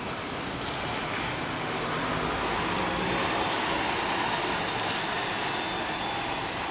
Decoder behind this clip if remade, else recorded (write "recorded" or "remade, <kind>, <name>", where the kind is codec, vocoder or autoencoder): recorded